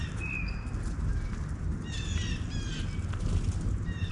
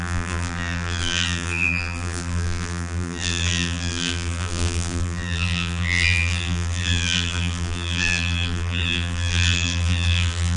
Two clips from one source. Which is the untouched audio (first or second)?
first